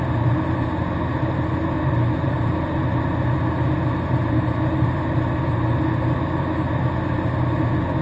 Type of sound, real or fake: real